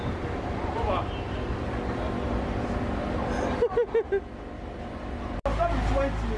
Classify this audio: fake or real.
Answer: real